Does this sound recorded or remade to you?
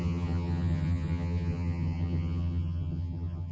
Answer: remade